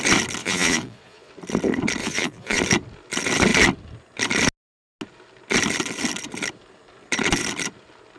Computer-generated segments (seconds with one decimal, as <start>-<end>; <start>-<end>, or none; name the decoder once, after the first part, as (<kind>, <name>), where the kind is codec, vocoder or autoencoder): 0.4-1.3 (vocoder, Vocos); 2.0-2.6